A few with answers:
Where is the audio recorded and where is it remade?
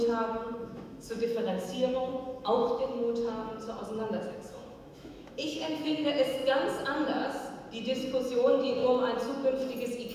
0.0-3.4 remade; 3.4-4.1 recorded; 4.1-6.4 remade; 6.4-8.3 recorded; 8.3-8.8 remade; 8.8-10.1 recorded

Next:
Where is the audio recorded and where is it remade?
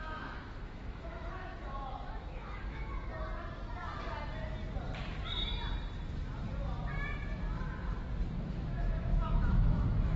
0.0-3.1 remade; 3.1-8.4 recorded; 8.4-10.2 remade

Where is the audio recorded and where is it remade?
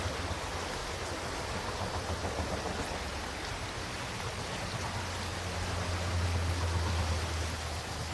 0.0-8.1 recorded